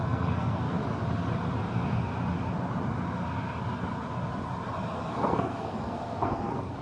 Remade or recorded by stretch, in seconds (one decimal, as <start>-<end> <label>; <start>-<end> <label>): 0.0-0.8 remade; 0.8-4.9 recorded; 4.9-6.8 remade